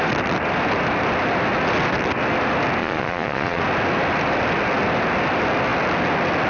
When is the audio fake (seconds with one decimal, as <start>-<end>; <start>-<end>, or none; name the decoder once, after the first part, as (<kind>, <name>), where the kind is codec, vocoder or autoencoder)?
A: 2.8-3.6 (vocoder, Vocos)